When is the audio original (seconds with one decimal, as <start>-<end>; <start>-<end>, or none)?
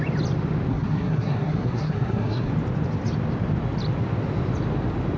0.0-0.7; 2.5-5.2